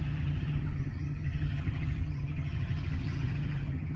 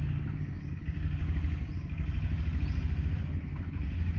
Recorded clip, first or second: second